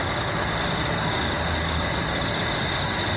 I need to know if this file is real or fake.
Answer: real